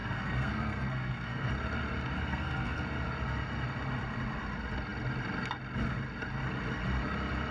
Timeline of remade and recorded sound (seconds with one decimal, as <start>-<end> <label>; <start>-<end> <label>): 0.0-1.5 remade; 1.5-2.3 recorded; 2.3-2.8 remade; 2.8-7.5 recorded